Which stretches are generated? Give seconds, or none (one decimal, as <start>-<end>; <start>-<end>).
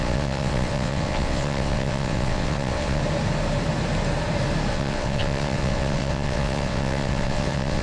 0.0-3.0; 4.7-7.8